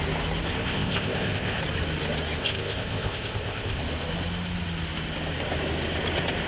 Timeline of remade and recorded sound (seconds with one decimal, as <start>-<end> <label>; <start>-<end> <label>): 0.0-0.5 recorded; 0.5-1.6 remade; 1.6-2.4 recorded; 2.4-3.8 remade; 3.8-6.5 recorded